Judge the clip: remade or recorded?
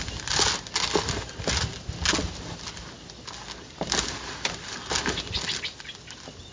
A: recorded